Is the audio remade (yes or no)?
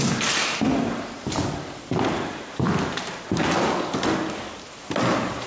no